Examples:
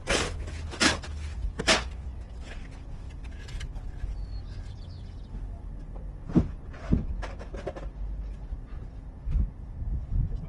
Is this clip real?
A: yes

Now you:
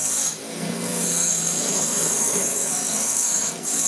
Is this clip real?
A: no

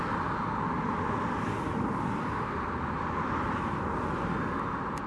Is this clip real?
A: yes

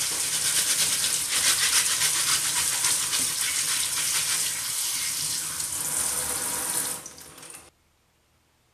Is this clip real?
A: yes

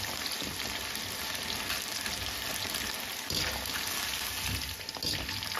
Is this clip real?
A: yes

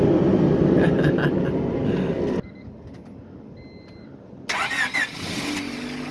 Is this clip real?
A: yes